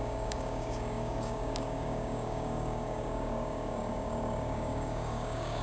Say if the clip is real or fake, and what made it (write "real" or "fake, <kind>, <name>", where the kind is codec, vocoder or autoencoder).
fake, codec, DAC